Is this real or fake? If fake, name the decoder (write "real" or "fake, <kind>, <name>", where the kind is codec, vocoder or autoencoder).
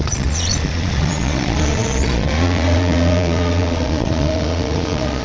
fake, vocoder, Vocos